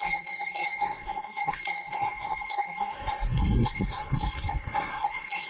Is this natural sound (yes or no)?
no